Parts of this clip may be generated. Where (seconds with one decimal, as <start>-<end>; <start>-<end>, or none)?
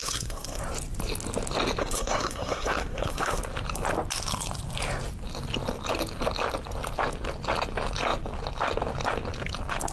0.0-0.6; 1.8-3.4